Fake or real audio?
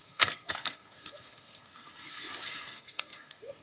fake